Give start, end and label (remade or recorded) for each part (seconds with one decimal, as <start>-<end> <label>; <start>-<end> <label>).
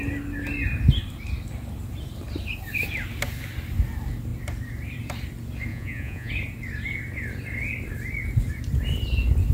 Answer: 0.0-5.7 recorded; 5.7-6.3 remade; 6.3-9.5 recorded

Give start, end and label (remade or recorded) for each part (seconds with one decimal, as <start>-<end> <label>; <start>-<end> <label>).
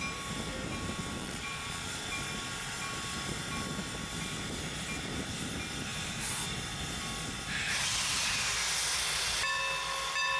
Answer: 0.0-1.2 recorded; 1.2-1.9 remade; 1.9-10.4 recorded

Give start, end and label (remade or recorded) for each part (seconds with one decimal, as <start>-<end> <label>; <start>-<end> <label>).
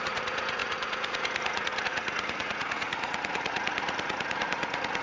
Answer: 0.0-5.0 remade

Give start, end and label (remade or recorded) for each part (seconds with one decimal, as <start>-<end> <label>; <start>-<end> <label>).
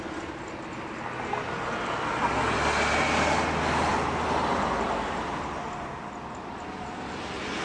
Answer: 0.0-7.6 recorded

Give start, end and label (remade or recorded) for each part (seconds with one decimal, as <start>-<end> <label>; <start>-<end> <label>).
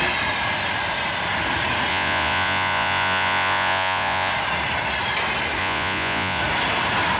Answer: 0.0-1.9 recorded; 1.9-4.3 remade; 4.3-5.6 recorded; 5.6-6.4 remade; 6.4-7.2 recorded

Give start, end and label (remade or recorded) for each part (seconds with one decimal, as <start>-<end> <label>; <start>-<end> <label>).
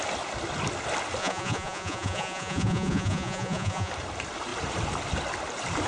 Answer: 0.0-1.2 recorded; 1.2-3.9 remade; 3.9-5.9 recorded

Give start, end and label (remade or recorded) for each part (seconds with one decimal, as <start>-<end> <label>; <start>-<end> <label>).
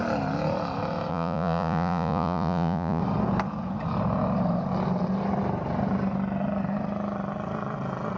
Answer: 0.0-1.1 recorded; 1.1-3.0 remade; 3.0-8.2 recorded